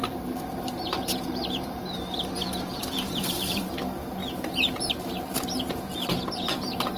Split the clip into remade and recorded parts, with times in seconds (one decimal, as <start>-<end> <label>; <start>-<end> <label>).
0.0-3.8 remade; 3.8-4.2 recorded; 4.2-7.0 remade